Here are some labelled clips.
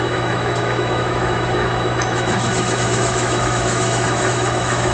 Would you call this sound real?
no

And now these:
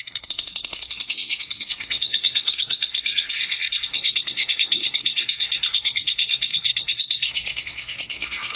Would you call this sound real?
no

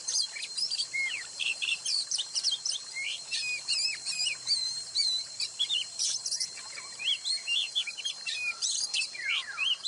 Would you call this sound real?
no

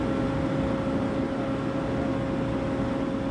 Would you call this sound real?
yes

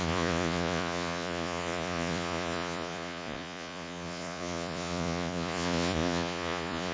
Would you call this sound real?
no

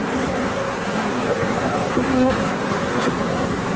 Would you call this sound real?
no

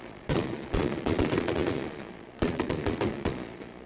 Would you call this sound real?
no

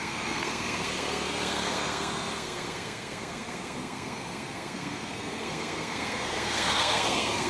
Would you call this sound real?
no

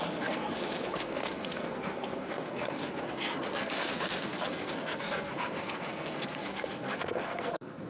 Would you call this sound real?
no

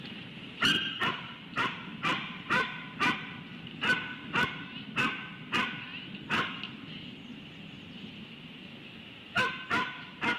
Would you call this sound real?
no